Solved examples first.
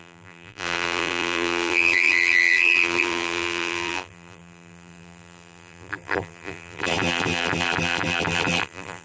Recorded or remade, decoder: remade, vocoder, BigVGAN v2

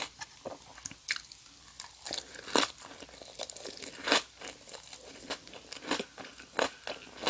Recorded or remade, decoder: recorded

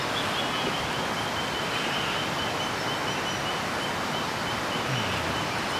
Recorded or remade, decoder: recorded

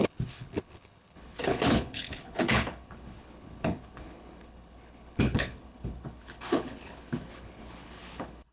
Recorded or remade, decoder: remade, codec, HILCodec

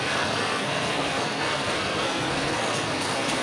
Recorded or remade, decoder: remade, codec, SNAC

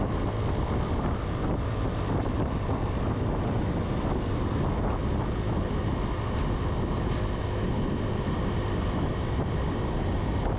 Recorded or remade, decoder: recorded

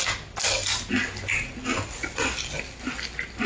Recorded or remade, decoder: recorded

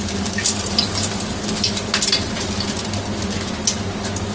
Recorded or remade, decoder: recorded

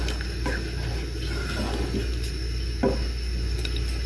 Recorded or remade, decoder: recorded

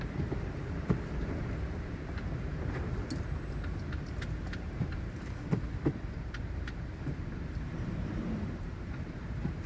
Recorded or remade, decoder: remade, vocoder, BigVGAN v2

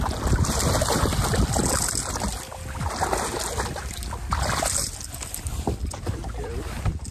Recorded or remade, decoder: recorded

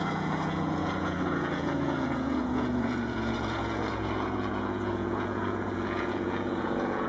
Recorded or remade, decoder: remade, vocoder, Vocos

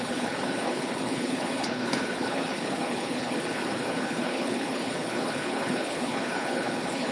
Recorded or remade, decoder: remade, codec, HILCodec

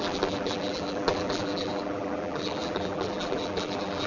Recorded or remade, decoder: remade, vocoder, BigVGAN v2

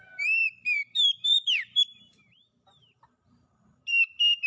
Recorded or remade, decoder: remade, vocoder, BigVGAN v2